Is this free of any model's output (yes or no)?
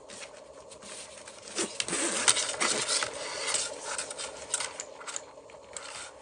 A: yes